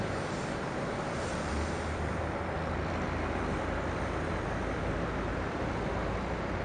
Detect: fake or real fake